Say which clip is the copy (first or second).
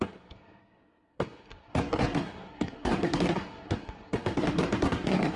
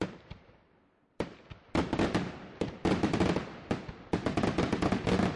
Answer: first